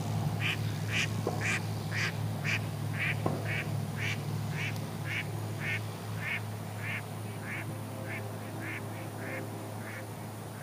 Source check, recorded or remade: recorded